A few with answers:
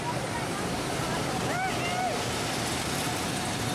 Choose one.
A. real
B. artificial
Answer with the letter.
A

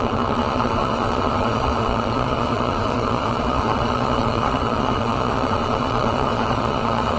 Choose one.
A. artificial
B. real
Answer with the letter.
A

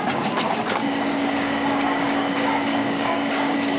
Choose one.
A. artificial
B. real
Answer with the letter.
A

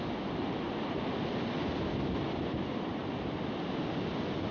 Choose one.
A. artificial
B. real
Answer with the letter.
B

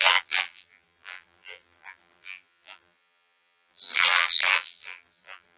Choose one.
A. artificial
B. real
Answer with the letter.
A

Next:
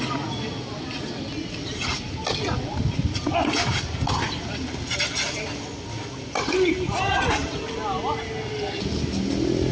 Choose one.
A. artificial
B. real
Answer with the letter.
B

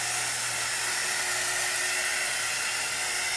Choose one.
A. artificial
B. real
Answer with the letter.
B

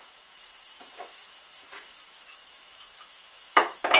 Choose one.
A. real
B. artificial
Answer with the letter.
B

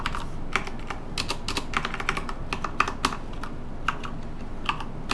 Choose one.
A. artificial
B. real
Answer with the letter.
B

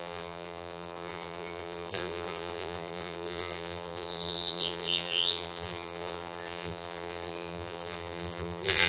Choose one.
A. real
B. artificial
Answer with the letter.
B